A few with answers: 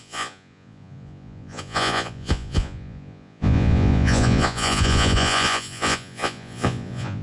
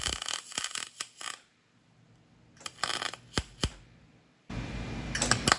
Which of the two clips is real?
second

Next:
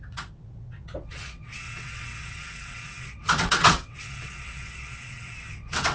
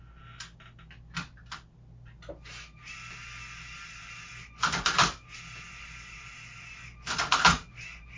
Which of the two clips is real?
second